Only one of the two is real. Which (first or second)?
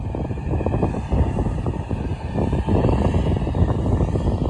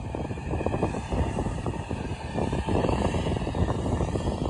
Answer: first